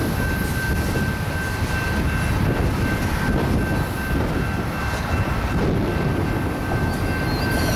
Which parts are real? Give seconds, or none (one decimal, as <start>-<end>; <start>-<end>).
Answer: 0.0-7.8